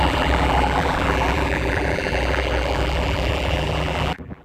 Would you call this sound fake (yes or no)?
yes